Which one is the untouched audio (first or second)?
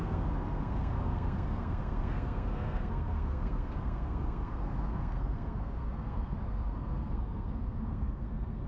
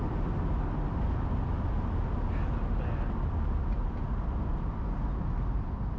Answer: second